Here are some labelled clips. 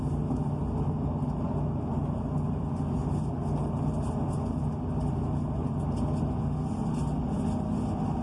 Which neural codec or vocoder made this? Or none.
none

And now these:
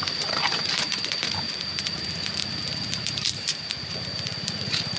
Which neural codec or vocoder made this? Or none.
vocoder, BigVGAN v2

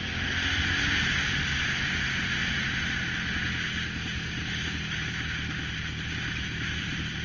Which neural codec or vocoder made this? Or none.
none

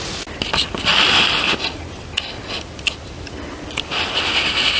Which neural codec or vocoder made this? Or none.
none